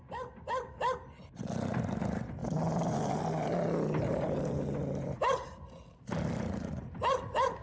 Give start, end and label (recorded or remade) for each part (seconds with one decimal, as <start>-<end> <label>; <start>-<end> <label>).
0.0-7.6 recorded

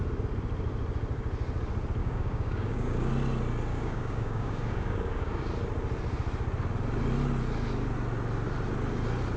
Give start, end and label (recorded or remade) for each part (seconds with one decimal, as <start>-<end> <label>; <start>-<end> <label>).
0.0-2.0 recorded; 2.0-3.1 remade; 3.1-3.7 recorded; 3.7-5.5 remade; 5.5-9.4 recorded

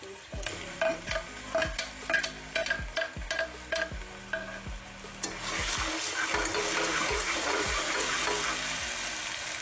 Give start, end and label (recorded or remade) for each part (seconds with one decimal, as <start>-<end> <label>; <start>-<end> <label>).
0.0-6.9 recorded; 6.9-8.2 remade; 8.2-9.6 recorded

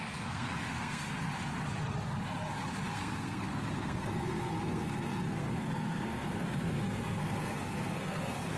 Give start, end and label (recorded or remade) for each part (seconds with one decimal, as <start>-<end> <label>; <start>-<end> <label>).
0.0-1.0 remade; 1.0-2.9 recorded; 2.9-8.6 remade